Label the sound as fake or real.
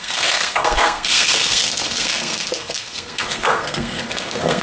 fake